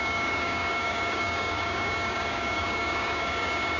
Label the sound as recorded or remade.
remade